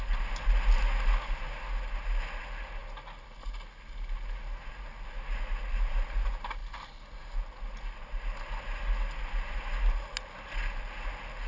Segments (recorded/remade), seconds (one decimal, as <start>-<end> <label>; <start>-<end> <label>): 0.0-11.5 recorded